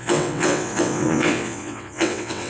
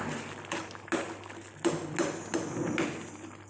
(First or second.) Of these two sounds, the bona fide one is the second